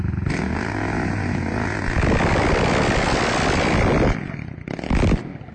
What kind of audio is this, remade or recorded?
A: recorded